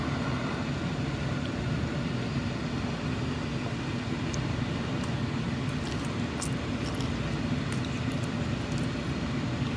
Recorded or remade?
recorded